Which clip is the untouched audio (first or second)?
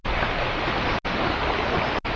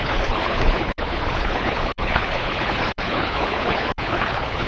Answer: first